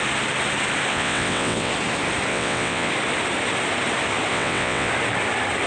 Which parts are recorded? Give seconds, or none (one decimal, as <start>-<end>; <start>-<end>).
0.0-0.9; 1.7-2.3; 2.9-4.3; 4.9-5.7